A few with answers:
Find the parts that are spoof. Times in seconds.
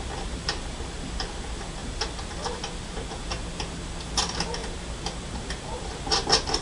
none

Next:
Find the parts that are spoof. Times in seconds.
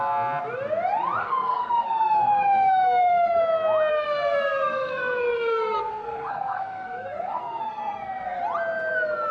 1.2-3.4 (codec, SNAC); 3.9-8.4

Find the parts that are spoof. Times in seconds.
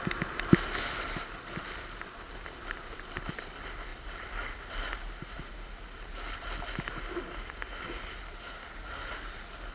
none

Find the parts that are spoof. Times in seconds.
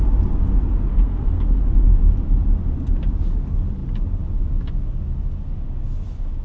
0.9-1.6 (codec, SNAC)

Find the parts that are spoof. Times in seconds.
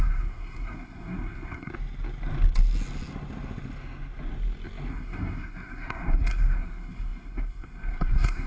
0.0-1.7 (codec, SNAC); 4.9-8.5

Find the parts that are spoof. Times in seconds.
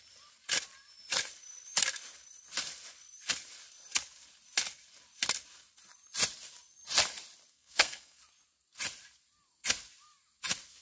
7.5-8.2 (codec, SNAC)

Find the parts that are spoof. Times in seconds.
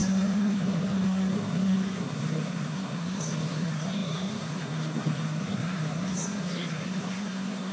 0.0-7.7 (codec, SNAC)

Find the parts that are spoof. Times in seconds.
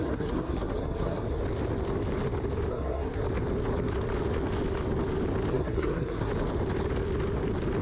0.0-1.4 (codec, SNAC); 2.7-3.2; 5.5-6.3